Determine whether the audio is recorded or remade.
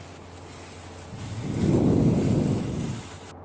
recorded